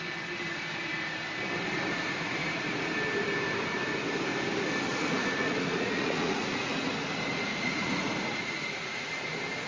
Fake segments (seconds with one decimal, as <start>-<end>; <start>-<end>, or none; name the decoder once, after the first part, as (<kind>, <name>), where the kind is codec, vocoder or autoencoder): 2.4-2.9 (vocoder, Vocos); 4.9-6.9; 7.5-9.1